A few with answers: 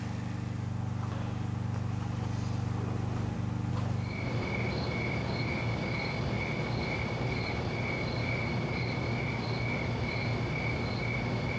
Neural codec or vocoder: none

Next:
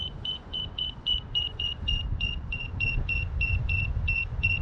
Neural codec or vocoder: vocoder, Vocos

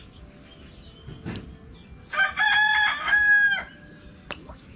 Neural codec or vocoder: none